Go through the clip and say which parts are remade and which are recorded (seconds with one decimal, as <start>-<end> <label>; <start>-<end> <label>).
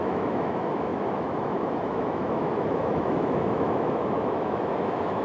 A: 0.0-5.2 remade